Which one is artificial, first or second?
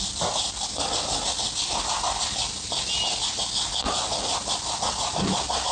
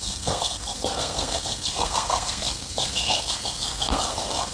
second